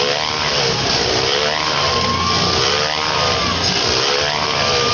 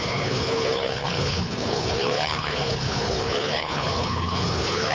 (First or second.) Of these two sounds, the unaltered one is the first